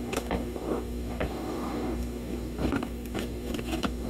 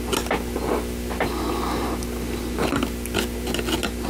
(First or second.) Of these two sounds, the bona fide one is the second